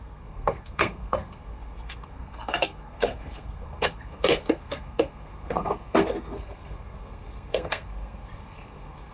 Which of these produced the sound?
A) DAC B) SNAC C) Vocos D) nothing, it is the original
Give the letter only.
B